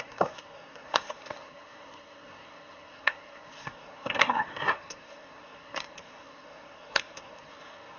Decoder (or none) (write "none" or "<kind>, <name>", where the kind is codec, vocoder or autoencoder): codec, SNAC